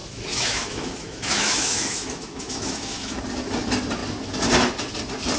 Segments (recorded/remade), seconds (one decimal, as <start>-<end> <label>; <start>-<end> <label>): 0.0-3.2 remade; 3.2-5.4 recorded